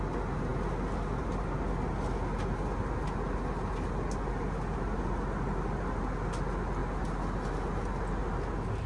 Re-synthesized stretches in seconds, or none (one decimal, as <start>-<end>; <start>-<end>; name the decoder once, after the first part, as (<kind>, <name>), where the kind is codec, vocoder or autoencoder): none